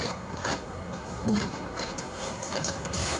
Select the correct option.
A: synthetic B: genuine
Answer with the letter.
A